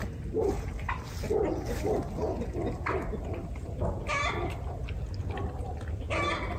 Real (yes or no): yes